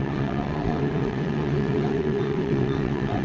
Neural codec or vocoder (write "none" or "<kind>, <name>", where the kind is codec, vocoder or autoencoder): vocoder, WaveNeXt